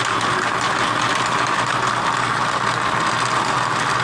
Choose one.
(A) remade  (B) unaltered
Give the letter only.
B